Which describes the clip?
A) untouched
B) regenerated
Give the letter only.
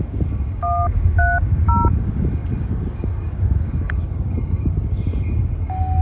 B